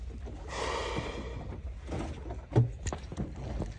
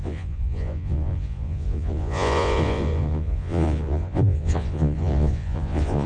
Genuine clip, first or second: first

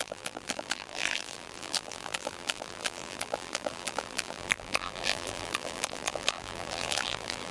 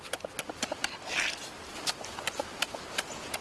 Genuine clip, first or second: second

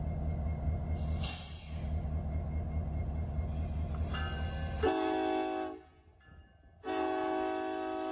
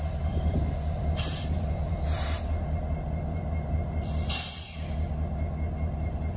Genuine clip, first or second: first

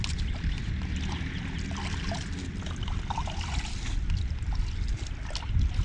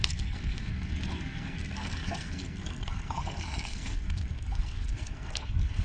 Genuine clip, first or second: first